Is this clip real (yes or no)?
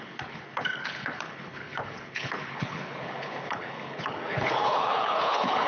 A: no